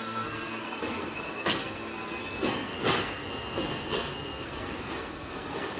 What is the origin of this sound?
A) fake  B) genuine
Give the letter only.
A